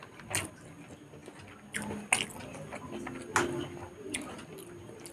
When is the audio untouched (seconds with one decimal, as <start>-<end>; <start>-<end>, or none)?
0.0-5.1

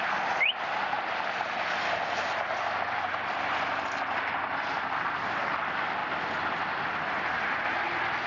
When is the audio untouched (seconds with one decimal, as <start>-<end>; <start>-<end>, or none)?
0.0-8.3

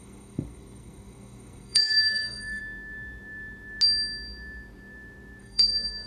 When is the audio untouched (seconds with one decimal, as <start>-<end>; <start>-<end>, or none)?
2.6-5.4